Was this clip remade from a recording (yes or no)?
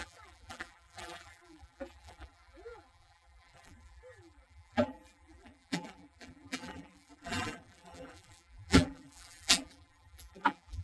yes